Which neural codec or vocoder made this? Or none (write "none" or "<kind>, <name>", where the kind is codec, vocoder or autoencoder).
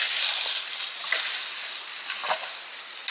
none